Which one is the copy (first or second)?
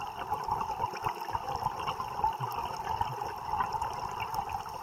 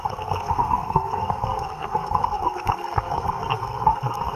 second